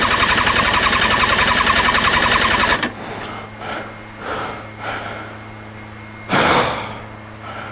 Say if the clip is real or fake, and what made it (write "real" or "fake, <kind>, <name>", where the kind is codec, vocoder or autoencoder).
real